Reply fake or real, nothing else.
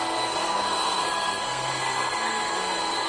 fake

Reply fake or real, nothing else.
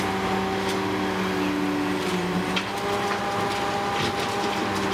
real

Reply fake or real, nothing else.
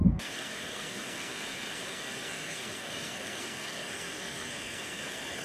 fake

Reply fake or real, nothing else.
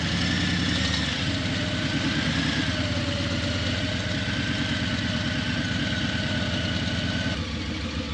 real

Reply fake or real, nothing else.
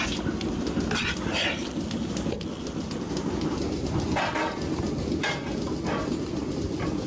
real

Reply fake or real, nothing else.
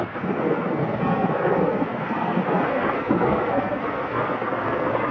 fake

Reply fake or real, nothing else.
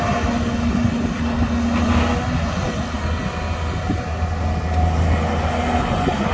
real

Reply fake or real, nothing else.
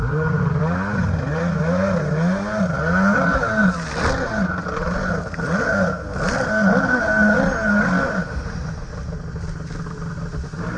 real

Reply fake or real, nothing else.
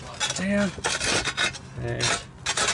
real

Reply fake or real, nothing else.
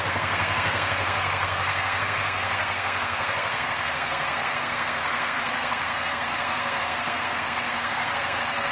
fake